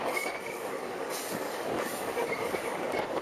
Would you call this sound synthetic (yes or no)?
yes